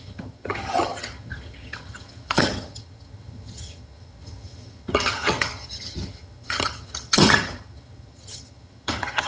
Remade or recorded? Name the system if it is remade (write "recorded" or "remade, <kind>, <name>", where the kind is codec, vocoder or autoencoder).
remade, vocoder, HiFi-GAN